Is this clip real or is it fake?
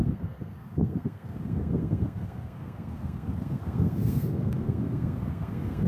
fake